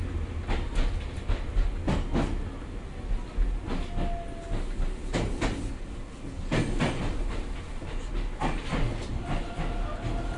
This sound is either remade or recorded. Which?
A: recorded